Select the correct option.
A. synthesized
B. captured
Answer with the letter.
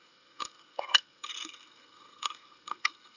A